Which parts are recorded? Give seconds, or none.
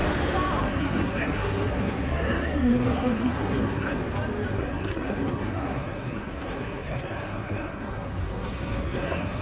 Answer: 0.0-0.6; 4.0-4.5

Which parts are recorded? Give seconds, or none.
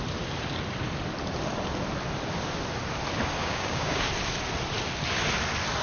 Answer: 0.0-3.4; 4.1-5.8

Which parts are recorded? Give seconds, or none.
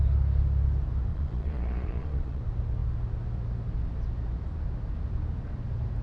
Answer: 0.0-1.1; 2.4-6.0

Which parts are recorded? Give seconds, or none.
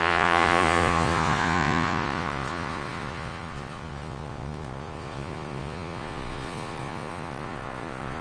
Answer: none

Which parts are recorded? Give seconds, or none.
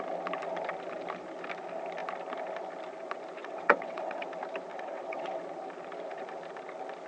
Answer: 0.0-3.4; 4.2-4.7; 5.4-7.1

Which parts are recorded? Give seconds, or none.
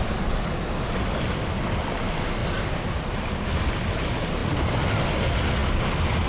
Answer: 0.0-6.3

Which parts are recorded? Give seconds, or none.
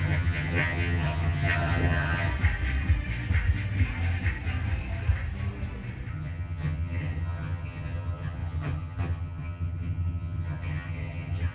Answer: 2.3-6.1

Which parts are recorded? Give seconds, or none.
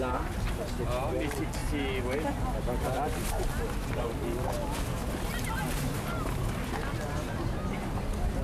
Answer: 0.0-8.4